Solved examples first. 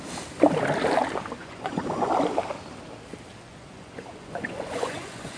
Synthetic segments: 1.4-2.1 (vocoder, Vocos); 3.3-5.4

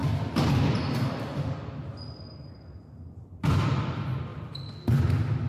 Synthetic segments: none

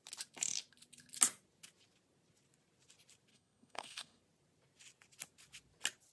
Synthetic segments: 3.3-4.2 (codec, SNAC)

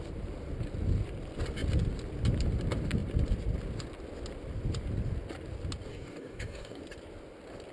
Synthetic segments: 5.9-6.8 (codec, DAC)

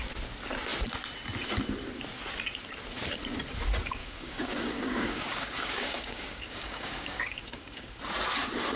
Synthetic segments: 4.0-8.0 (codec, DAC)

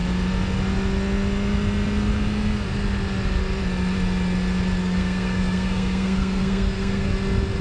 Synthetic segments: 4.8-7.1 (codec, SNAC)

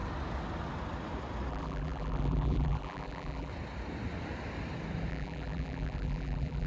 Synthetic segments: 1.5-3.5 (vocoder, BigVGAN v2); 5.1-6.7

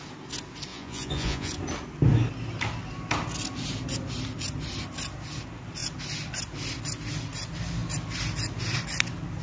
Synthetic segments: 0.7-1.5 (vocoder, Vocos)